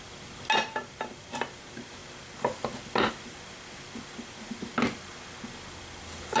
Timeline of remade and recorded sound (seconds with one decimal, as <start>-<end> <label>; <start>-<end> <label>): 0.0-6.4 recorded